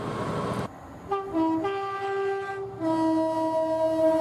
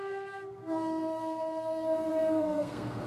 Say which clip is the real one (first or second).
first